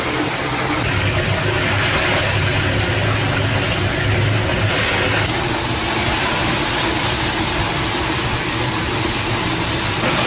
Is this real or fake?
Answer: real